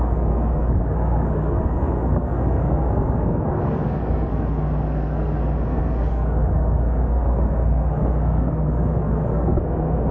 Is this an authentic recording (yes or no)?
no